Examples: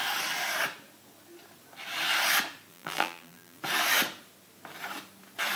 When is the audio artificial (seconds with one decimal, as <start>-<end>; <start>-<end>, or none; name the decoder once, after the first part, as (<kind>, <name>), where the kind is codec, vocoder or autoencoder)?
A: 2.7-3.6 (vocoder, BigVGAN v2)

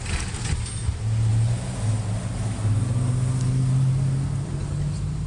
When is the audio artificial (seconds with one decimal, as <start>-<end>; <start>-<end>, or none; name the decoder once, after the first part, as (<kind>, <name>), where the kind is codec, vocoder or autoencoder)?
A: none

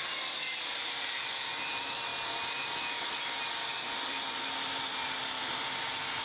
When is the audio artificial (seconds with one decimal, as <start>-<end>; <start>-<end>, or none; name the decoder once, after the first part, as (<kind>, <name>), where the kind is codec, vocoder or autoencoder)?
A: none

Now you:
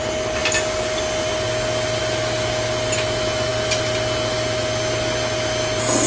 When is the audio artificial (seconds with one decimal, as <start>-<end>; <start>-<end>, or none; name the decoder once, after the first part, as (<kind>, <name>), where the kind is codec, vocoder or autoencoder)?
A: none